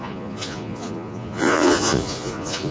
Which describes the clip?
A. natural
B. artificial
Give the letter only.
B